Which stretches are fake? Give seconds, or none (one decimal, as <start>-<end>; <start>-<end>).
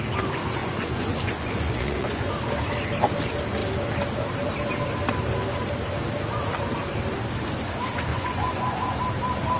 0.6-2.3; 8.1-9.0